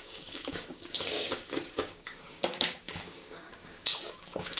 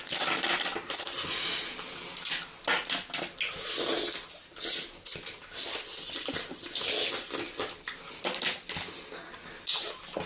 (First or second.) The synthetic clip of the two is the first